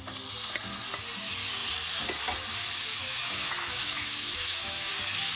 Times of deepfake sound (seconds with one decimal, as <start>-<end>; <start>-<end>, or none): 3.0-4.9